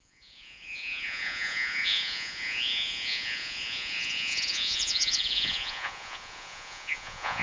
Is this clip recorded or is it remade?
remade